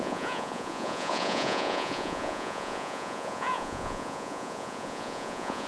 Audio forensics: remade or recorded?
remade